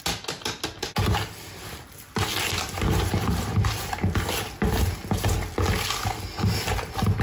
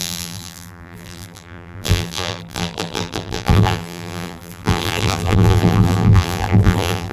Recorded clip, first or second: first